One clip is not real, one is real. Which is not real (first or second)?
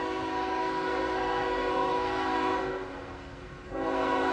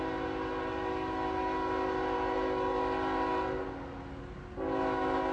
first